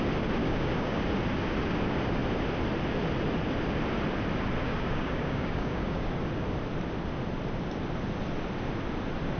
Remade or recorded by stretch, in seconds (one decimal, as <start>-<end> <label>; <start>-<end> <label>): 0.0-0.4 recorded; 0.4-1.0 remade; 1.0-4.6 recorded; 4.6-6.1 remade; 6.1-9.4 recorded

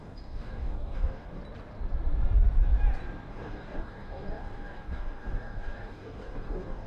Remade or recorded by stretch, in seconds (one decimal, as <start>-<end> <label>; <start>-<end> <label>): 0.0-1.4 remade; 1.4-3.3 recorded; 3.3-6.9 remade

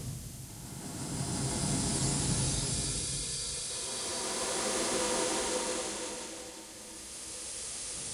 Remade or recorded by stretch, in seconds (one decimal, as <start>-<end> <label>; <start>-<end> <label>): 0.0-1.9 recorded; 1.9-2.7 remade; 2.7-8.1 recorded